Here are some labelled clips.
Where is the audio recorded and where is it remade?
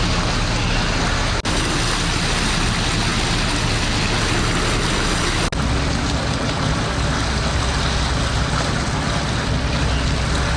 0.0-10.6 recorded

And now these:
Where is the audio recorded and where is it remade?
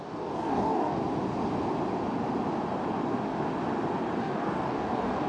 0.0-1.0 remade; 1.0-4.2 recorded; 4.2-5.3 remade